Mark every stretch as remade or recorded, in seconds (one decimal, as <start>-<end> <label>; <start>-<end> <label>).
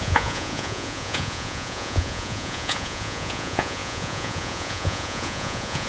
0.0-5.9 remade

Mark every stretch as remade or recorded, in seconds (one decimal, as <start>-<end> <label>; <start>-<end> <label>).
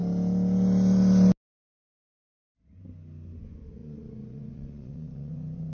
0.0-3.4 recorded; 3.4-5.7 remade